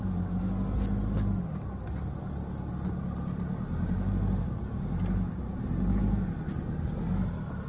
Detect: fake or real real